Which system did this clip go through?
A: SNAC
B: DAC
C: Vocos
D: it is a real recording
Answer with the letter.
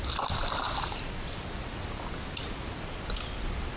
D